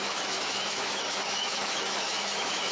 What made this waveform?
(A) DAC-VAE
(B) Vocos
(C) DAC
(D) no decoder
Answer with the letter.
A